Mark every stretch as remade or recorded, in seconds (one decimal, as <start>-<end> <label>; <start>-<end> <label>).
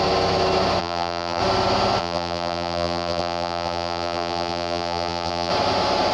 0.0-0.8 recorded; 0.8-1.4 remade; 1.4-2.0 recorded; 2.0-5.5 remade; 5.5-6.1 recorded